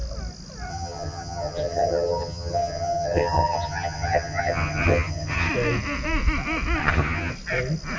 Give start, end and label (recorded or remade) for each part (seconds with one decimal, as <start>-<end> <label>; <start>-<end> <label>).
0.0-0.7 recorded; 0.7-5.5 remade; 5.5-6.8 recorded; 6.8-7.3 remade; 7.3-8.0 recorded